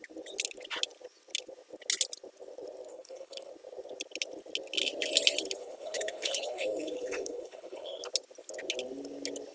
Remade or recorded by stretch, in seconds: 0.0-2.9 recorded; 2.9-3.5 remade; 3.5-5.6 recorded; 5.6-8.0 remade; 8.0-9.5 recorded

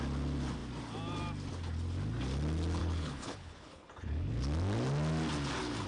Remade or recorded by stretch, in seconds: 0.0-2.8 recorded; 2.8-4.3 remade; 4.3-5.9 recorded

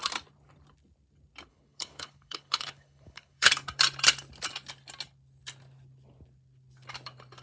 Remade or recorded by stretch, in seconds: 0.0-1.5 recorded; 1.5-3.5 remade; 3.5-7.4 recorded